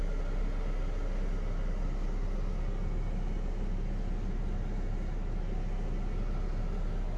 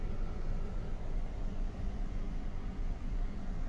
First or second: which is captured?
first